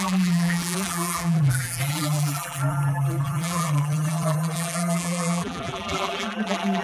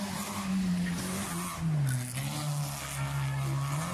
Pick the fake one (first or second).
first